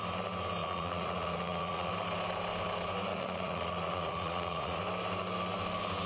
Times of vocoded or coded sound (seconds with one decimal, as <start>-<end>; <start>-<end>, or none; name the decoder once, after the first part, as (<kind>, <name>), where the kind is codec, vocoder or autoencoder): 0.6-1.9 (vocoder, Vocos); 3.1-4.8